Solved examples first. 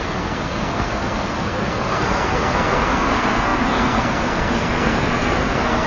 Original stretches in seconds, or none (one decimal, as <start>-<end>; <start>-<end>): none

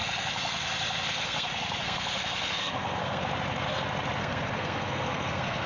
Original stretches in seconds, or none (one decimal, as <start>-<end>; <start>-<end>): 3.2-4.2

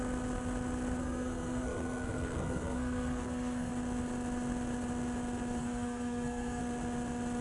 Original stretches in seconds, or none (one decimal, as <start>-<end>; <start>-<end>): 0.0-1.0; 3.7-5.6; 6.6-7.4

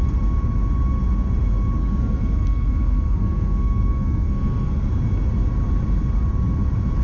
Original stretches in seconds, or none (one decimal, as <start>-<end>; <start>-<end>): 0.0-1.8; 4.9-7.0

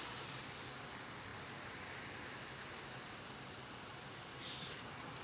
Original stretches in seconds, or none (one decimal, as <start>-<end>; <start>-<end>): 0.0-5.2